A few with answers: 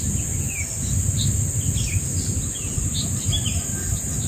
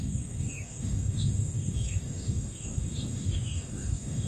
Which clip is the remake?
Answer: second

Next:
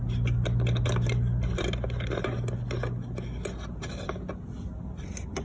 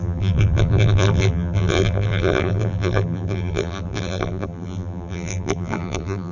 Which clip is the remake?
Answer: second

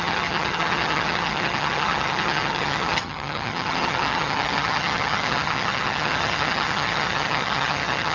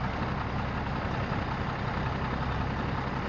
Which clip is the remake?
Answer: first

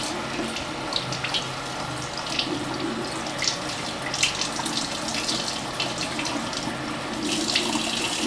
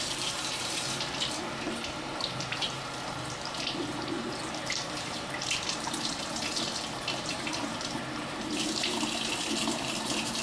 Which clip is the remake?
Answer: second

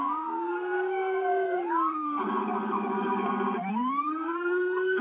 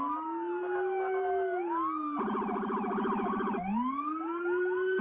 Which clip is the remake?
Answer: first